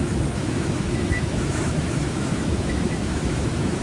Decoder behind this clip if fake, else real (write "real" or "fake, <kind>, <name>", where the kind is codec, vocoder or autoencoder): fake, autoencoder, DAC-VAE